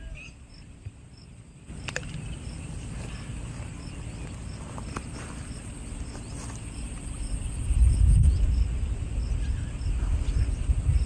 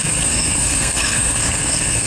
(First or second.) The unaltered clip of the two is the first